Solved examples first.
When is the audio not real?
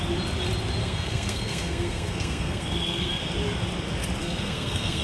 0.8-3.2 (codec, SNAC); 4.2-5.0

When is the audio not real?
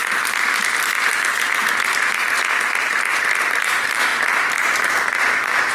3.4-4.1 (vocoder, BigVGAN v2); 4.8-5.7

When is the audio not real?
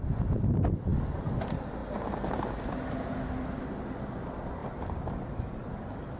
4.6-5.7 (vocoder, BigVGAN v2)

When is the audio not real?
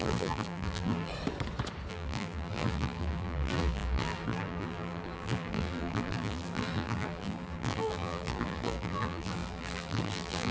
0.0-1.1 (vocoder, BigVGAN v2); 1.9-10.5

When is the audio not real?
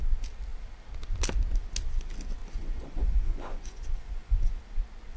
2.4-4.6 (vocoder, Vocos)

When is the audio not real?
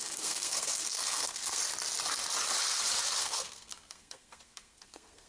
0.0-1.6 (codec, SNAC); 3.2-5.3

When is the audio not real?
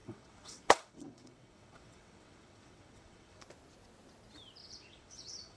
0.0-3.4 (vocoder, WaveNeXt); 4.6-5.6